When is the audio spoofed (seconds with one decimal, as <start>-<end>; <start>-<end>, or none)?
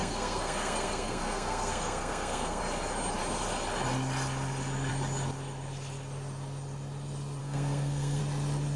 0.0-2.6; 7.4-8.2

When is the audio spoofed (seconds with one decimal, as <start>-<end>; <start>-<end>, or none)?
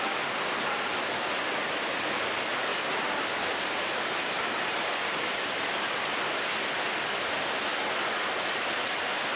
2.7-5.8